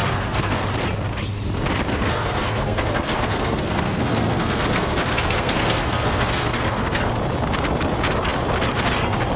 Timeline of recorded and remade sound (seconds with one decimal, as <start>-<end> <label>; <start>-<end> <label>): 0.0-0.6 remade; 0.6-1.9 recorded; 1.9-7.1 remade; 7.1-9.4 recorded